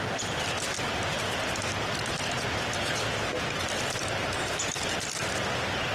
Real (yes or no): yes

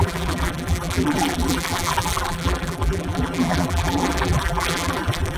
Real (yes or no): no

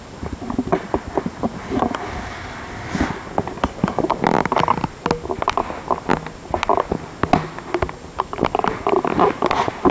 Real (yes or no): yes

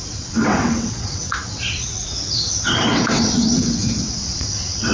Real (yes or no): no